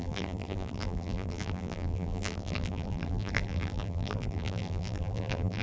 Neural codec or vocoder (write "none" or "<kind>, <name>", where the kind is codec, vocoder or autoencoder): vocoder, BigVGAN v2